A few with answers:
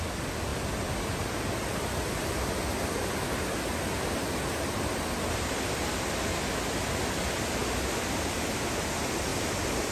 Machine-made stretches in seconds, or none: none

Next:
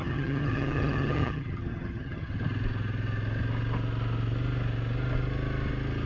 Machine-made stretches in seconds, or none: 0.0-2.3 (vocoder, HiFi-GAN)

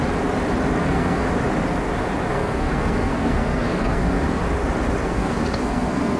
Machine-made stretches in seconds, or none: 0.8-1.3 (codec, SNAC); 2.3-4.4; 5.0-6.2

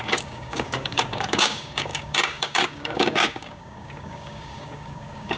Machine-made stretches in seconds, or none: 0.0-5.4 (codec, DAC)